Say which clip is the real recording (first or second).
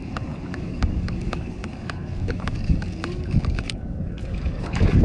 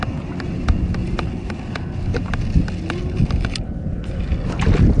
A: second